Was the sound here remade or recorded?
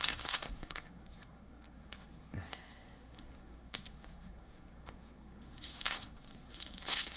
remade